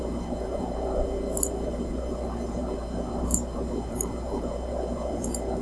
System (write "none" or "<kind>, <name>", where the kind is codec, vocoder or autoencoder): vocoder, BigVGAN v2